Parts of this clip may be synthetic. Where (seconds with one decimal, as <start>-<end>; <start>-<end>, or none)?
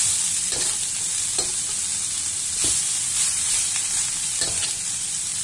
none